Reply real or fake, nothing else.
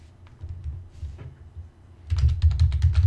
real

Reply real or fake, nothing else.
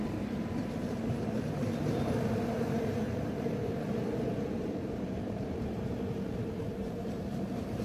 fake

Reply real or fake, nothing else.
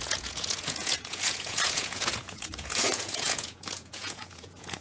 fake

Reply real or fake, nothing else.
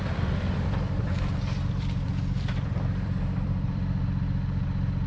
fake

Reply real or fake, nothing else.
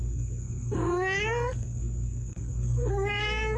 fake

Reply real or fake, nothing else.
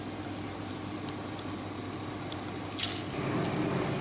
real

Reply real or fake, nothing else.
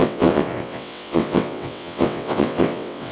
fake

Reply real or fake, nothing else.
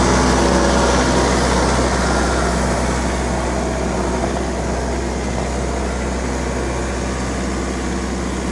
real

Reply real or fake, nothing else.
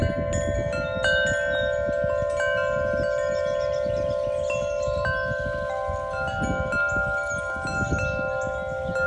real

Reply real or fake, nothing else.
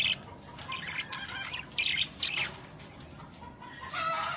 real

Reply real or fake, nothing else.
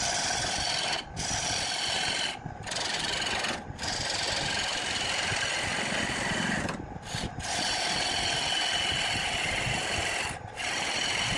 real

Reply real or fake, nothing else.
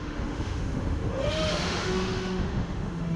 fake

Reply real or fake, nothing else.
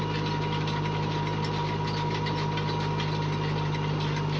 real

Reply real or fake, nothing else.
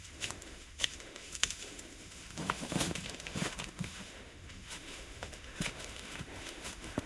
fake